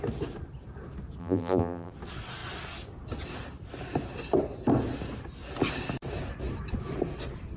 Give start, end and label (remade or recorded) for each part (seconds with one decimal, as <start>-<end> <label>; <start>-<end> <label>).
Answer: 0.0-1.2 recorded; 1.2-1.9 remade; 1.9-7.6 recorded